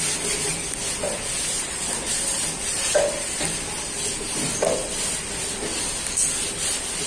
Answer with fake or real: real